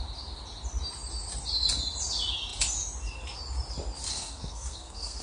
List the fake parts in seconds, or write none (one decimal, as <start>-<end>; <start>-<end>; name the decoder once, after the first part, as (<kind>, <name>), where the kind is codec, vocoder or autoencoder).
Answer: 4.1-5.2 (codec, SNAC)